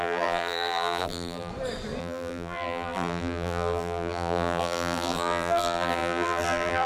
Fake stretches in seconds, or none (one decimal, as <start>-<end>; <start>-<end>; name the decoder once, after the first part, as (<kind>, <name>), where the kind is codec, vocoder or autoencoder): 0.0-1.5 (vocoder, BigVGAN v2); 2.0-6.9